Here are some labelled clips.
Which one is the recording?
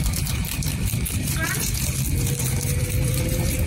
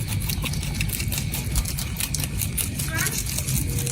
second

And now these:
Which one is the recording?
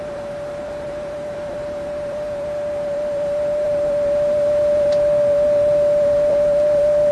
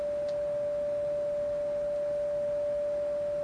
second